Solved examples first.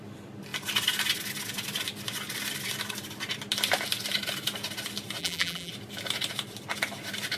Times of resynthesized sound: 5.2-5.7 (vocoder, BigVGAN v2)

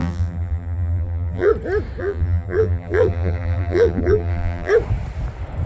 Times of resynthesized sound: 0.0-1.5 (vocoder, BigVGAN v2); 2.0-4.7